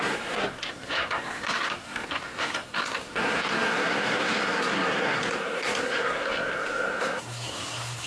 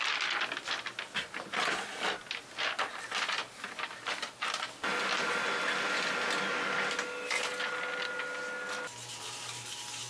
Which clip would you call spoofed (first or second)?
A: first